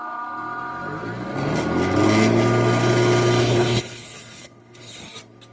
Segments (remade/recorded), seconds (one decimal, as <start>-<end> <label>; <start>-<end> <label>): 0.0-3.4 recorded; 3.4-5.0 remade; 5.0-5.5 recorded